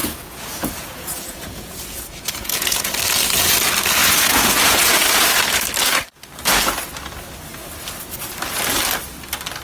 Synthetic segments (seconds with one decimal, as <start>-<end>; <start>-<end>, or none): 0.0-2.9; 4.0-4.9